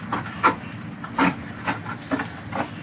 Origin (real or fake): real